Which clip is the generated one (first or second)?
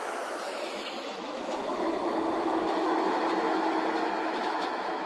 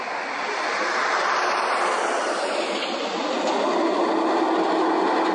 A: first